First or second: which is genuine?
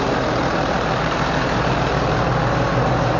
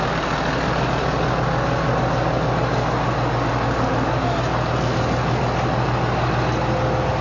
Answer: second